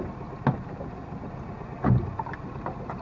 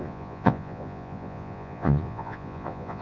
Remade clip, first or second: second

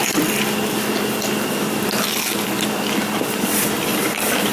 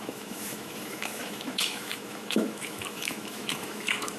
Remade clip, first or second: second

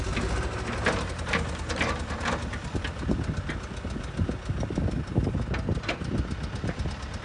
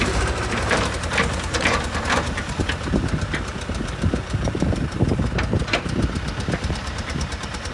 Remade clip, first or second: second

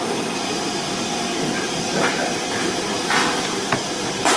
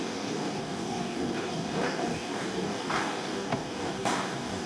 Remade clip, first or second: second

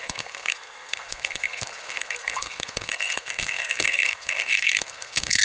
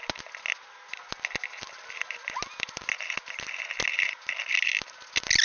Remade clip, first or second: first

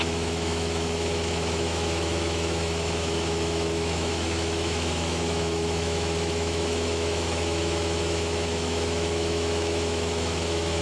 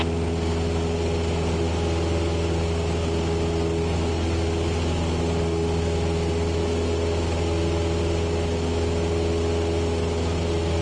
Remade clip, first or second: first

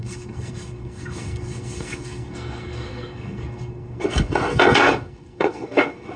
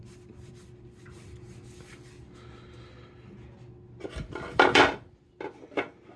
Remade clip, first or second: first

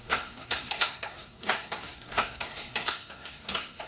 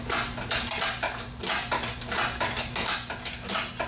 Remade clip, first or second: first